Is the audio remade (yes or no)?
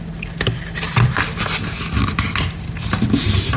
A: no